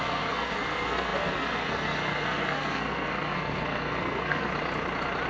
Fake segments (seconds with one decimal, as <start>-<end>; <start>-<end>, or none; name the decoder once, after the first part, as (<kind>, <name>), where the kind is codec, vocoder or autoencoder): 0.0-4.5 (codec, SNAC)